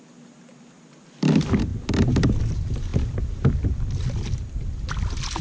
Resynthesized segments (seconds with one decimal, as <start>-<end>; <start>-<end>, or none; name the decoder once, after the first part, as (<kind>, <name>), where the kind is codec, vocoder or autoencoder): none